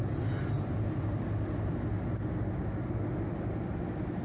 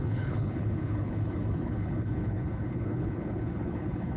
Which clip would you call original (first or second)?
first